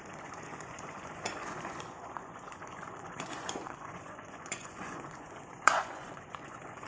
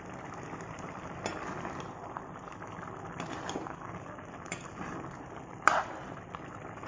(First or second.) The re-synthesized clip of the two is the first